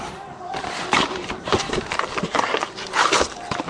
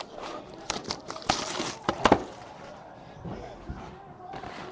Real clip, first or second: second